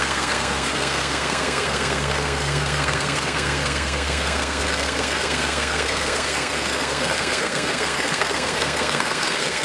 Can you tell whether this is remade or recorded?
remade